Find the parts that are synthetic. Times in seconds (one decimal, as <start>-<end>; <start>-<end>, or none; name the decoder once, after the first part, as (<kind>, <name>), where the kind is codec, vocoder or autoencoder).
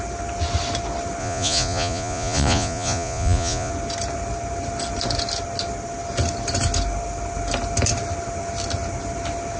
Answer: 1.2-3.7 (vocoder, Vocos)